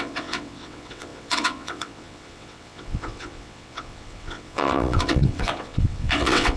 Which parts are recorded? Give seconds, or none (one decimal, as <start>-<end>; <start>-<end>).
none